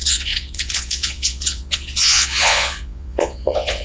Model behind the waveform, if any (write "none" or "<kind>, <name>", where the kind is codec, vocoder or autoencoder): vocoder, Vocos